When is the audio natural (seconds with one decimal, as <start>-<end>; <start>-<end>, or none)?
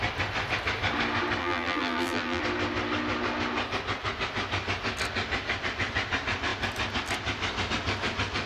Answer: 0.0-1.4; 2.4-8.5